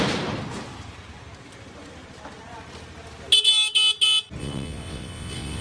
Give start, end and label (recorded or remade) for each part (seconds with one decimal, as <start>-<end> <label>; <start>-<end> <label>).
0.0-4.4 recorded; 4.4-5.6 remade